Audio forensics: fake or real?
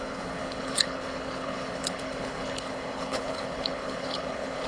fake